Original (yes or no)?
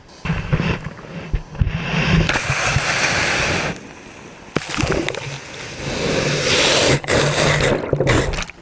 yes